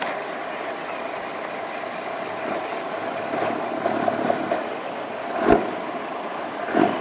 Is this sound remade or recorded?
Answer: recorded